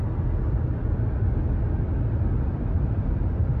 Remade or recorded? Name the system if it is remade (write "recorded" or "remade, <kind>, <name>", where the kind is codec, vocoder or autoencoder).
recorded